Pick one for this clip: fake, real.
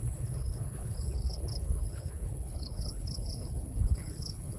fake